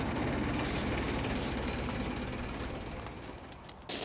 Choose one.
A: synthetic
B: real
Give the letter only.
B